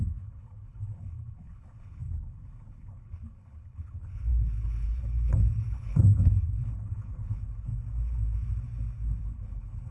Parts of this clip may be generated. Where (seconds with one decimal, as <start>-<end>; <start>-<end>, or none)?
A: 0.0-7.7; 9.2-9.9

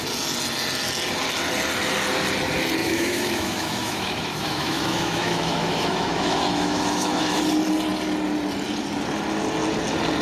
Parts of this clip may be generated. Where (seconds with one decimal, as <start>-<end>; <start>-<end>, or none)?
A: 2.8-7.5

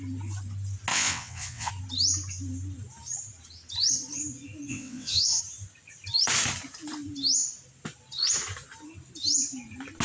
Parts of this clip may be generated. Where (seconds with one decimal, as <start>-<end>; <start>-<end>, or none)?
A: 0.9-1.7; 4.7-5.4